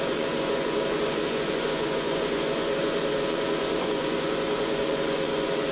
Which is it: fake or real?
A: fake